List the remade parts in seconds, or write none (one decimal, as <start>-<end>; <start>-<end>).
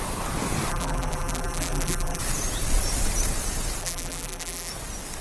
0.7-2.2; 3.8-4.7